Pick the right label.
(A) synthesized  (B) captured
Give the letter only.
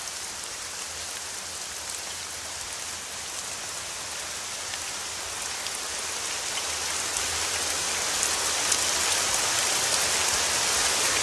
B